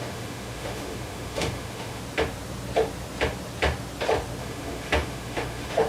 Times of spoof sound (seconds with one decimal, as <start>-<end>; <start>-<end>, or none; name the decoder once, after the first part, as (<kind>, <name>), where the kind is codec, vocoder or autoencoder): 0.0-2.0 (autoencoder, DAC-VAE); 4.4-5.9